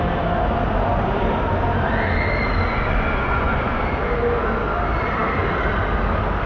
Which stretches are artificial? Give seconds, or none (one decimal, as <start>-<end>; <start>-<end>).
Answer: 2.7-3.8